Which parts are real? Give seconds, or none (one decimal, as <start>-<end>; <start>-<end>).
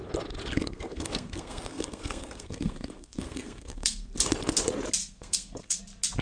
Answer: 0.0-0.4; 4.1-5.0; 5.8-6.2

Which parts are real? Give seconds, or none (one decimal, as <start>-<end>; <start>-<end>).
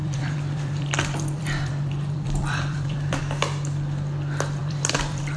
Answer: 3.2-4.6